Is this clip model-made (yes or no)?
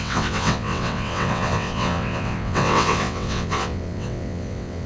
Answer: yes